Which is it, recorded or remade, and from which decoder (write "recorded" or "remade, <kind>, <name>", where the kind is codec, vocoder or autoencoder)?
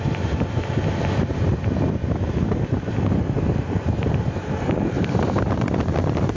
remade, vocoder, BigVGAN v2